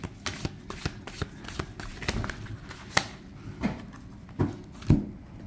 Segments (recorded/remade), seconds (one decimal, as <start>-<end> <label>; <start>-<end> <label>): 0.0-5.5 recorded